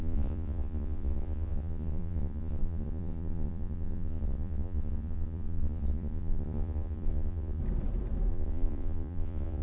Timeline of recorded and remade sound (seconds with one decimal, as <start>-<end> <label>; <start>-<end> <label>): 0.0-7.6 remade; 7.6-8.3 recorded; 8.3-9.6 remade